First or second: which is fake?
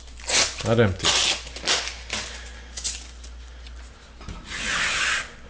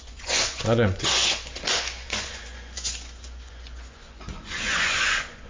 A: second